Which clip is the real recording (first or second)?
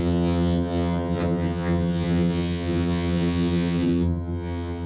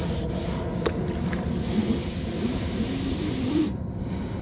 second